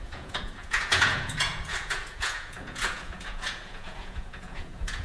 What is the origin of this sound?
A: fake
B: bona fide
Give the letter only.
A